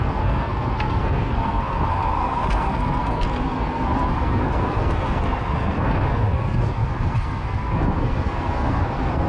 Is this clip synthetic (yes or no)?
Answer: yes